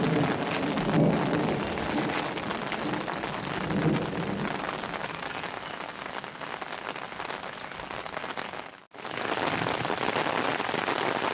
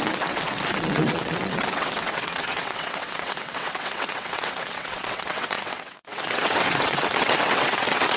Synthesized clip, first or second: second